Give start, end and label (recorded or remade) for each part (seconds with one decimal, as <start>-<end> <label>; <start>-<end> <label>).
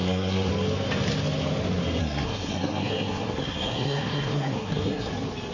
0.0-0.5 remade; 0.5-2.0 recorded; 2.0-5.1 remade; 5.1-5.5 recorded